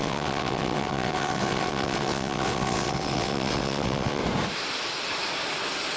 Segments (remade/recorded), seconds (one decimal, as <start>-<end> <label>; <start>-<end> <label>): 0.0-4.2 remade; 4.2-6.0 recorded